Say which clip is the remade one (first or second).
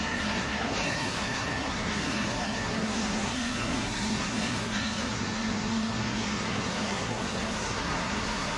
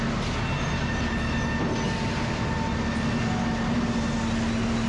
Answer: first